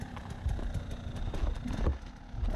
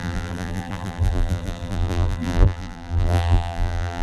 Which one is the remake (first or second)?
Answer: second